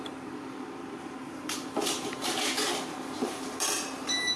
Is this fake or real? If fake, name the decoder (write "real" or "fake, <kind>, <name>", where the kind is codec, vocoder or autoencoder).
fake, vocoder, BigVGAN v2